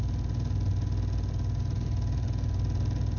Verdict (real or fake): real